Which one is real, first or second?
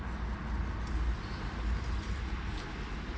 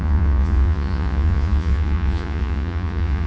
first